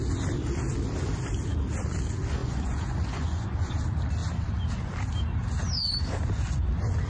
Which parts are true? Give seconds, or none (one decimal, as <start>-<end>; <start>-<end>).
0.0-2.4; 3.8-7.1